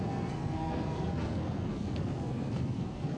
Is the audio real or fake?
fake